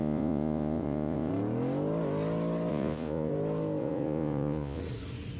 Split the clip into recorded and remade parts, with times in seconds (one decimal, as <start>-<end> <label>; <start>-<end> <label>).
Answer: 0.0-1.3 remade; 1.3-2.7 recorded; 2.7-3.3 remade; 3.3-3.8 recorded; 3.8-4.8 remade; 4.8-5.4 recorded